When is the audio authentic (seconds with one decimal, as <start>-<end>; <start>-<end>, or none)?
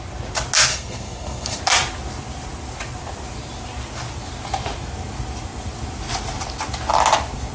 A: 0.0-0.7; 1.6-7.5